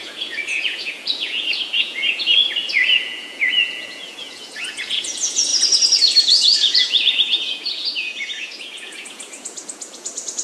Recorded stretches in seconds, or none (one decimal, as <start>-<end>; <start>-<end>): 5.5-6.2